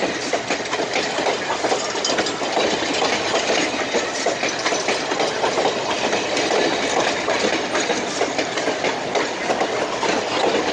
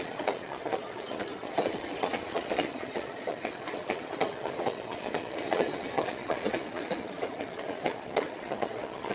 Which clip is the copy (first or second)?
second